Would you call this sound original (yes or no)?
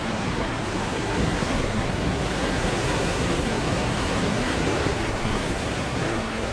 no